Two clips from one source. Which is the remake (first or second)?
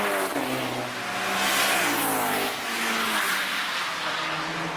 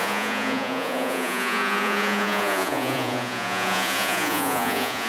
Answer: second